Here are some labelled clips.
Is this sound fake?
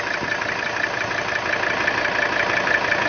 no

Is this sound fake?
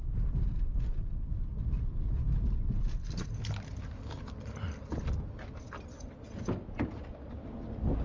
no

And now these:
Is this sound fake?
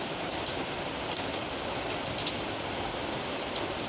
no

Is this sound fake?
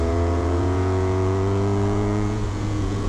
yes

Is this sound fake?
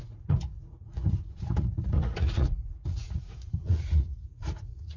yes